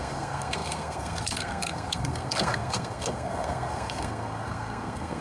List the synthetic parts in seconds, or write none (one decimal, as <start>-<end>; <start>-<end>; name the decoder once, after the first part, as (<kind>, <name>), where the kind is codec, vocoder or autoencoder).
0.0-5.2 (codec, SNAC)